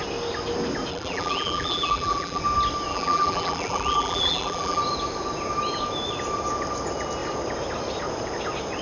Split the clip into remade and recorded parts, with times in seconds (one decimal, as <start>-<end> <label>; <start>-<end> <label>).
0.0-0.9 recorded; 0.9-2.4 remade; 2.4-2.9 recorded; 2.9-4.8 remade; 4.8-8.8 recorded